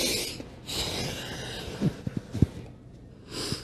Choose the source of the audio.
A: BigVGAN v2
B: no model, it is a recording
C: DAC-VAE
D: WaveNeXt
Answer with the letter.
B